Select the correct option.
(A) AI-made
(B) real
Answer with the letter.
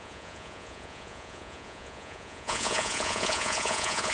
A